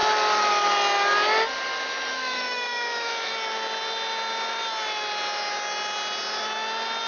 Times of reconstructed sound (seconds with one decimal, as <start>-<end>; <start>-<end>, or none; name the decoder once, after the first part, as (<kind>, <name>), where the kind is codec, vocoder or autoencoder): 2.1-3.3 (autoencoder, DAC-VAE)